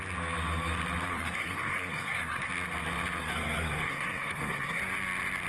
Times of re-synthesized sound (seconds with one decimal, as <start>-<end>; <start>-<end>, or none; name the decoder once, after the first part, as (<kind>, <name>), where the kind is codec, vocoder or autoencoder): 1.1-2.5 (codec, SNAC); 3.2-4.8

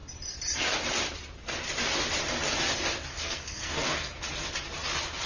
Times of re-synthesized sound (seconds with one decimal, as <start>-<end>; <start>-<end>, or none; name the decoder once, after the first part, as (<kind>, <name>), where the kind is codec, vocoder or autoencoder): 3.1-4.2 (codec, SNAC)

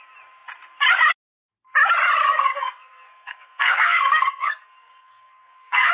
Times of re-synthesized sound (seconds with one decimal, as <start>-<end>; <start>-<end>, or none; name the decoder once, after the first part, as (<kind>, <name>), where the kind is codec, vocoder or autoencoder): 2.3-5.9 (codec, SNAC)

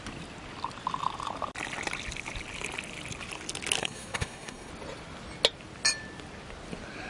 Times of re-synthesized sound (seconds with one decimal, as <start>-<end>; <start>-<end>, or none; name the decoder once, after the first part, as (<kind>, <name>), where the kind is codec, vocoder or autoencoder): 3.8-4.7 (codec, SNAC)

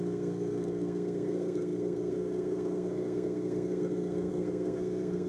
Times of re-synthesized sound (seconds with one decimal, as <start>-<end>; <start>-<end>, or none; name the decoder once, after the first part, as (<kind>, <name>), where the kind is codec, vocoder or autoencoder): 0.0-5.3 (codec, SNAC)